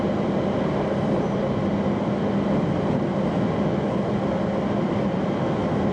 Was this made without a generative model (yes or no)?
yes